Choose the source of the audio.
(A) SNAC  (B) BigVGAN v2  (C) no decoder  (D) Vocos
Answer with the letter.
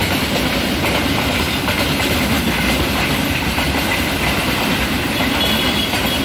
B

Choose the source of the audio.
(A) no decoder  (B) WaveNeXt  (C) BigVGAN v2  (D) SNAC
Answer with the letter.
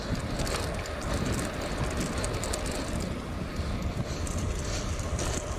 A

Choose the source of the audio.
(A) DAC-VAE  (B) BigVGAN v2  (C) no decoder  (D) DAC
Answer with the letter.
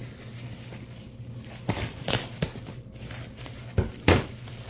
C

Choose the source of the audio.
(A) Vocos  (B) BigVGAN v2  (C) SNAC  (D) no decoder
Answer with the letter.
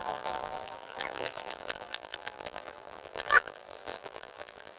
B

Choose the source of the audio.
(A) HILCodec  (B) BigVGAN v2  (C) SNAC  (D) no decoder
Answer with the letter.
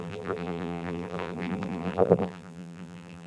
B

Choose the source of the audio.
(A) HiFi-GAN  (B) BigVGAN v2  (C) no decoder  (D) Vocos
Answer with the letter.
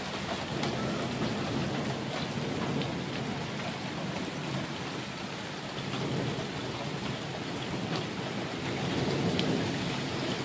C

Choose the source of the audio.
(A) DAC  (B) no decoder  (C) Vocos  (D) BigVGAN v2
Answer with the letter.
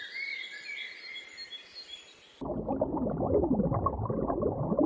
B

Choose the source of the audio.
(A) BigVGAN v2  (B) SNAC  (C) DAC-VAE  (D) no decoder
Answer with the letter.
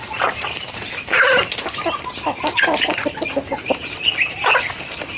A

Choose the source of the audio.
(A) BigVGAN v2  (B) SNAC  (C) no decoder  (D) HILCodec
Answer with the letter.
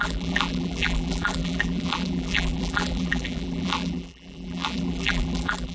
A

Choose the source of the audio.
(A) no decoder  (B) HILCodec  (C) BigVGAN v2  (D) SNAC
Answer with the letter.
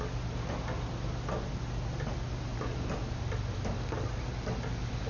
A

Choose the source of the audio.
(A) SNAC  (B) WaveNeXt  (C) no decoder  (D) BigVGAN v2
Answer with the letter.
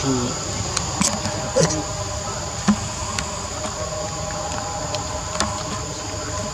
C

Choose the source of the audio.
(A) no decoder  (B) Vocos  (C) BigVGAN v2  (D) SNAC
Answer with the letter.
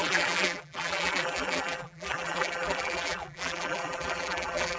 C